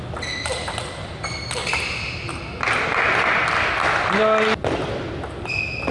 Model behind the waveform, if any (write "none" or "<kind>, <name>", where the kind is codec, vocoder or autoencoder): none